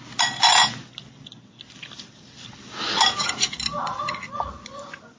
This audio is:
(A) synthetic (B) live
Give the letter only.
B